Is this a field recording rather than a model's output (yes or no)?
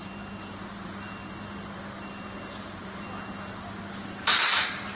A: no